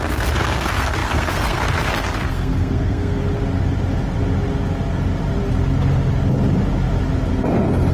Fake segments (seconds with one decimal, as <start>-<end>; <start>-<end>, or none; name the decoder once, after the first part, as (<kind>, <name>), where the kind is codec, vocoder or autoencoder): 0.0-3.2 (codec, SNAC)

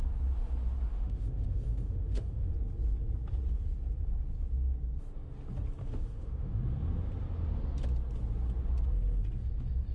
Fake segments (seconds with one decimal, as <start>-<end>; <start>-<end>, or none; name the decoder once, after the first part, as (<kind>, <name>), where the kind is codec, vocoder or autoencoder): 0.9-2.5 (autoencoder, DAC-VAE); 5.8-6.6

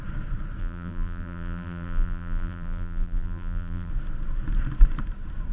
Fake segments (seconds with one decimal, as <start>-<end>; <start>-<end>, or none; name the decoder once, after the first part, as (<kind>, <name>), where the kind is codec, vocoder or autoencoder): 0.6-3.9 (vocoder, BigVGAN v2)

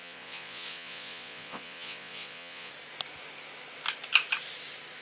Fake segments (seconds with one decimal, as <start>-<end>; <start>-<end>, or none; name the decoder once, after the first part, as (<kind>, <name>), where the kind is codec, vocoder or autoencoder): 0.0-2.7 (vocoder, Vocos)

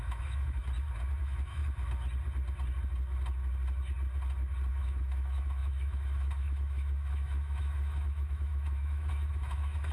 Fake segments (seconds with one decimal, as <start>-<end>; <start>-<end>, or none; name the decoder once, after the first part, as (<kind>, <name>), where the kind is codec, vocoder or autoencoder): 0.0-0.6 (autoencoder, DAC-VAE); 1.2-1.6; 4.7-9.9